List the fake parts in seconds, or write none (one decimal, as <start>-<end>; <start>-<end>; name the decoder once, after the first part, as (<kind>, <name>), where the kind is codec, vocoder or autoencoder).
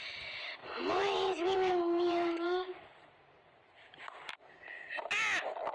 0.6-4.0 (vocoder, BigVGAN v2)